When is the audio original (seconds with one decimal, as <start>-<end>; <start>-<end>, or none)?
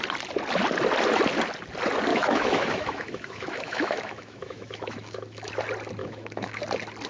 0.0-2.1; 5.5-6.0; 6.6-7.1